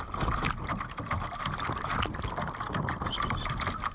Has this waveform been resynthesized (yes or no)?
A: no